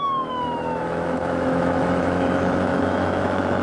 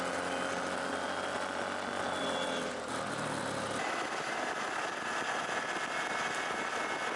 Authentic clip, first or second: second